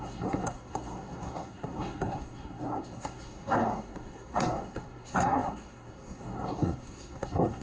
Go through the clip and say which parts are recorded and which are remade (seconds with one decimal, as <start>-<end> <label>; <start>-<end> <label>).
0.0-7.6 remade